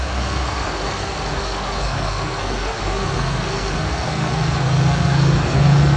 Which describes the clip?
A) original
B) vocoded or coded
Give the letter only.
B